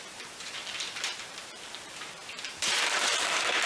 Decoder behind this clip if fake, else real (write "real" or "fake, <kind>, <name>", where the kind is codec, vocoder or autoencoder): fake, vocoder, BigVGAN v2